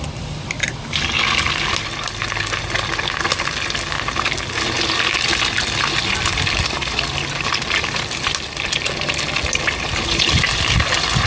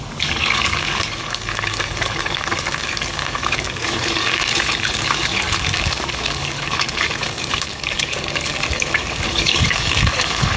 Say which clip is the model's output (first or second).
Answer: second